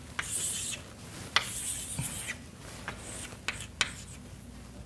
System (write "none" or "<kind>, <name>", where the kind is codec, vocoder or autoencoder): none